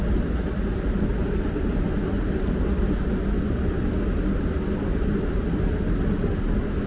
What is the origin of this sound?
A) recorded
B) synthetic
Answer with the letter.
A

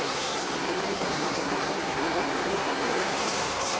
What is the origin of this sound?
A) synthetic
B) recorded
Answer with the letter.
A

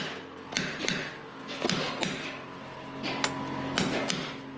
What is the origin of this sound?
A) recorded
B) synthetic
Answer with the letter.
A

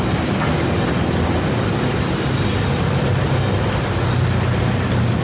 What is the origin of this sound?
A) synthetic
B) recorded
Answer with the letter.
B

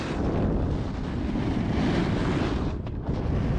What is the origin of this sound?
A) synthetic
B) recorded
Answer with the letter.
B